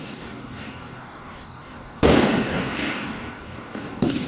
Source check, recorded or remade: remade